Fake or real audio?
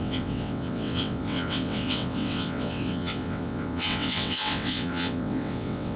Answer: fake